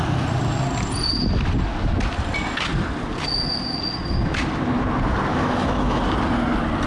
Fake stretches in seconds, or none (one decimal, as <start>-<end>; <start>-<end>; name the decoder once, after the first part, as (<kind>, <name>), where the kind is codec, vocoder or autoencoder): 5.3-6.0 (autoencoder, DAC-VAE)